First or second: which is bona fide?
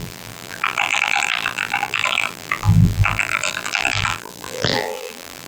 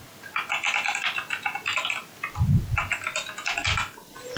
second